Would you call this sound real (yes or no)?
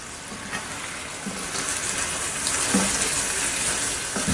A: yes